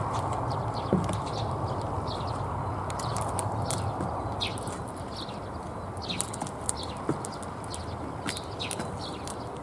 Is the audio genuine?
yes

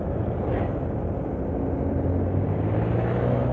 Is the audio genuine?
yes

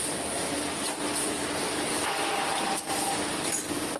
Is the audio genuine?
yes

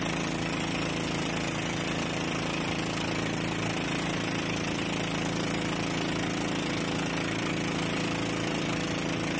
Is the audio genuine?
yes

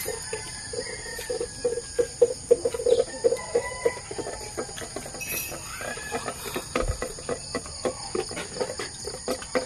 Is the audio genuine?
yes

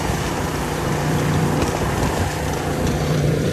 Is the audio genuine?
no